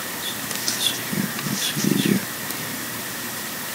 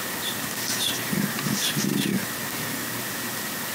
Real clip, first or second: second